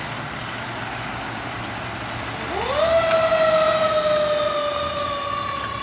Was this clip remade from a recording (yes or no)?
no